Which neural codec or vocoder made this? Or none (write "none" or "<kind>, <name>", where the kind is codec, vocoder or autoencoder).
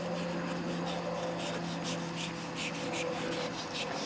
none